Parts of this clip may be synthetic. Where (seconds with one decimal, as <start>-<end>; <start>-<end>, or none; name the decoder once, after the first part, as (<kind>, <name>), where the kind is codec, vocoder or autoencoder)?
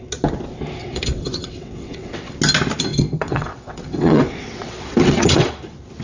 0.8-2.3 (vocoder, WaveNeXt); 2.9-5.5